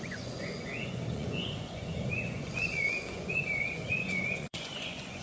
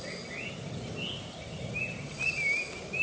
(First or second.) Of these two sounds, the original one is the second